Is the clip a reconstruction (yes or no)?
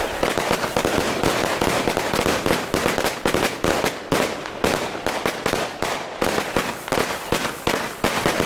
no